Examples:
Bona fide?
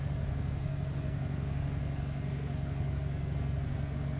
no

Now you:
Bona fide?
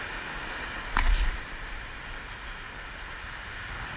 yes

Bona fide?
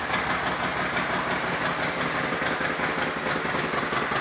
yes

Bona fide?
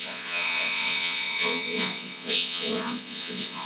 no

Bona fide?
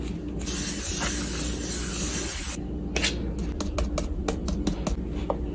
yes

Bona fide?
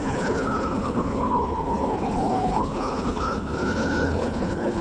no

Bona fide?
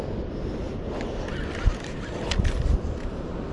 yes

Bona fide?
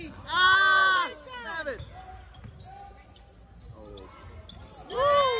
yes